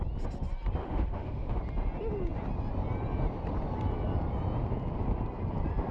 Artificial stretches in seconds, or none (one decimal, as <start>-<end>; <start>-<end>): 0.8-1.6